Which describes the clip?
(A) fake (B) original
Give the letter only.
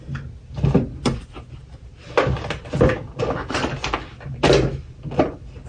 B